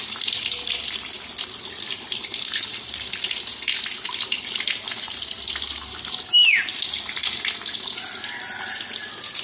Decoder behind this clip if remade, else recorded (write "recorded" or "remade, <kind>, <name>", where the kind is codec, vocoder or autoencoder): recorded